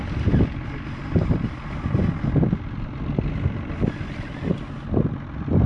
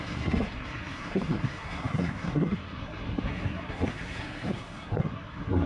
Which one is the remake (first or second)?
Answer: second